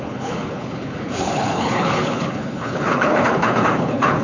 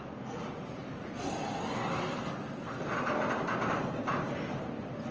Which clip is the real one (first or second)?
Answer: second